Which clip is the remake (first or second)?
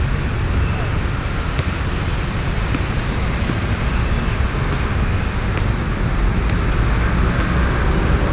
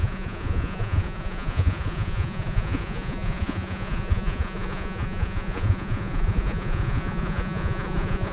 second